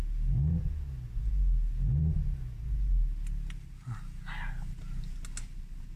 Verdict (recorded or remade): recorded